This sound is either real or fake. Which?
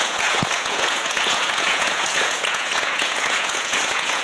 fake